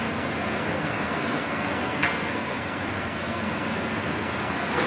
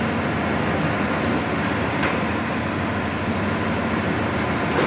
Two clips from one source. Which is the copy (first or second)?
first